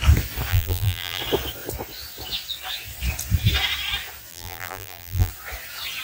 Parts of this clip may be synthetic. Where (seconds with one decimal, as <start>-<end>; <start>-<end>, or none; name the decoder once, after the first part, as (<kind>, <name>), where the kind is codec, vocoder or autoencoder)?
0.5-1.2 (vocoder, BigVGAN v2); 4.3-5.3